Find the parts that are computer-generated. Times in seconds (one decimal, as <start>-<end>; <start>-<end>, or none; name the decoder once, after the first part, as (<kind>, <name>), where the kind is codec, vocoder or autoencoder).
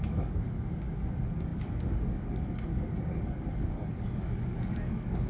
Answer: 0.0-5.3 (codec, DAC)